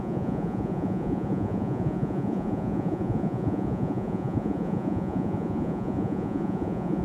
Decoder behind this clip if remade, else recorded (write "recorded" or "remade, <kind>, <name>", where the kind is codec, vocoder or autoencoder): remade, vocoder, Vocos